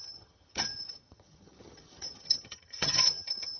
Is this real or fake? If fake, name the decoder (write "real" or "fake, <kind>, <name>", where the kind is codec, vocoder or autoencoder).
fake, vocoder, HiFi-GAN